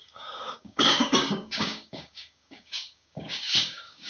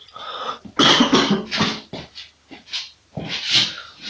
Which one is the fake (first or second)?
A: first